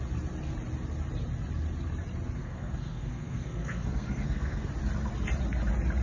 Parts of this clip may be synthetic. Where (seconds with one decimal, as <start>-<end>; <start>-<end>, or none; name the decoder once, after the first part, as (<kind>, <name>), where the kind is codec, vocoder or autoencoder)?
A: 2.4-4.7 (codec, SNAC)